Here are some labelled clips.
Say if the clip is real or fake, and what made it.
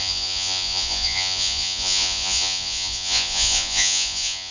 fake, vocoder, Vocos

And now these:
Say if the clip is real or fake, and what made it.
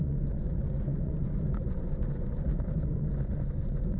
fake, vocoder, Vocos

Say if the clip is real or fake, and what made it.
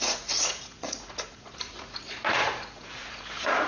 fake, vocoder, Vocos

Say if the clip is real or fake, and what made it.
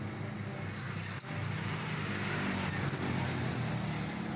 real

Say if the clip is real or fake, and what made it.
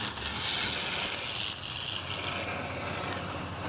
real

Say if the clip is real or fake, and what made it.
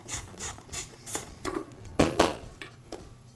fake, vocoder, Vocos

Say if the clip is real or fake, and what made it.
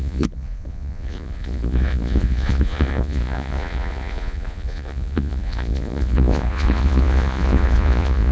fake, vocoder, Vocos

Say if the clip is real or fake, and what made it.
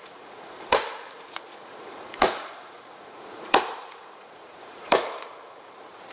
fake, vocoder, Vocos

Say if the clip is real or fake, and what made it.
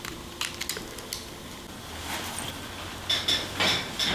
real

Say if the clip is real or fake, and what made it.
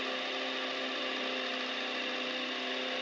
real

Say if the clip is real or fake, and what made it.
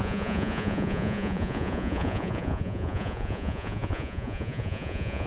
fake, vocoder, Vocos